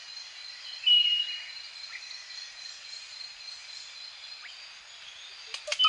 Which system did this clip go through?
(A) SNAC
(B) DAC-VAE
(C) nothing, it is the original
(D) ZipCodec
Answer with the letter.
C